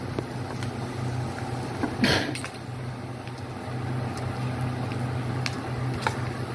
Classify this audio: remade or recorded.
recorded